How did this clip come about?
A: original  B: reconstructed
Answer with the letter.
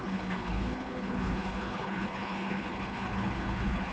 B